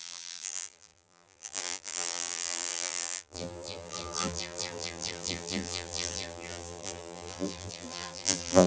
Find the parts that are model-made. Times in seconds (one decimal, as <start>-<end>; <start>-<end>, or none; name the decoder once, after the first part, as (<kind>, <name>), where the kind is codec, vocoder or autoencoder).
0.0-8.7 (vocoder, BigVGAN v2)